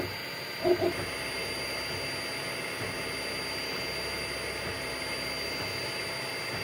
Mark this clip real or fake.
real